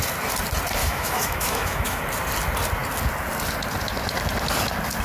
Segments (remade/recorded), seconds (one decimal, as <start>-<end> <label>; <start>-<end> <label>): 0.0-0.8 recorded; 0.8-2.0 remade; 2.0-5.0 recorded